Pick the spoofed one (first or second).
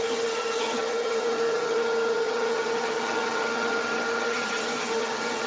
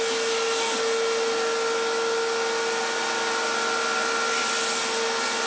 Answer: first